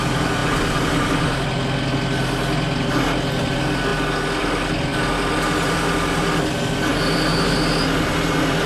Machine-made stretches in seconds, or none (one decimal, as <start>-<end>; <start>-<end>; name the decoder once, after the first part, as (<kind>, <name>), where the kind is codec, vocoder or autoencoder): none